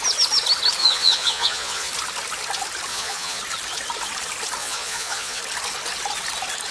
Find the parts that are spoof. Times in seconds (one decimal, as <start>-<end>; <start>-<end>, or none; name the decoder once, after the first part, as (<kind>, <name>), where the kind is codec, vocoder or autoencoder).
0.8-1.9 (vocoder, Vocos); 2.9-3.4; 4.6-5.4